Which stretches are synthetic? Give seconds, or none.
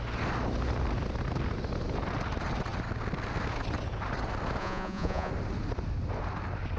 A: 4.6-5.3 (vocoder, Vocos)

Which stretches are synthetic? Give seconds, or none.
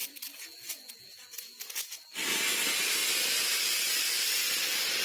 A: 0.0-1.6 (vocoder, Vocos)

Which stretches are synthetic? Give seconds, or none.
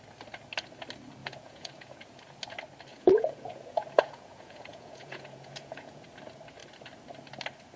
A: 1.2-2.0 (vocoder, Vocos); 2.9-6.1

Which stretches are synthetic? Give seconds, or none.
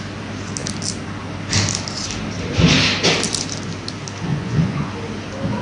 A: 4.3-4.9 (vocoder, Vocos)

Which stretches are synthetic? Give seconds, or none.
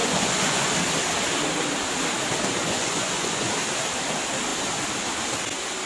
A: 0.0-0.7 (vocoder, Vocos); 2.6-3.5